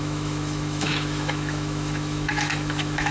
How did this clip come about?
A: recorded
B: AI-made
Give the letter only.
B